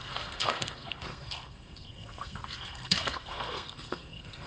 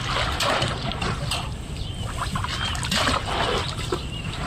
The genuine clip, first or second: second